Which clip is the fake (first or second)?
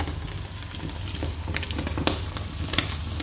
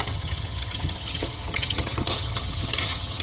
second